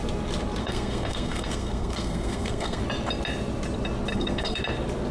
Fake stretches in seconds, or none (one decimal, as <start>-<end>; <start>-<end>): 0.6-2.8; 4.1-4.6